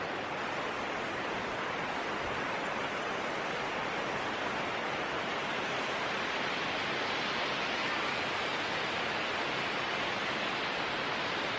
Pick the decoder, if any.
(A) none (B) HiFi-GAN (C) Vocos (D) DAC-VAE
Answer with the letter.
A